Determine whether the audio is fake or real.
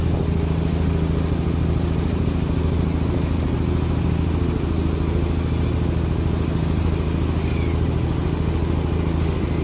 real